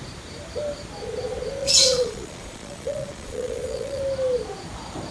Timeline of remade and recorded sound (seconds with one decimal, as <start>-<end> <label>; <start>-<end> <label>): 0.0-1.6 recorded; 1.6-4.0 remade; 4.0-5.1 recorded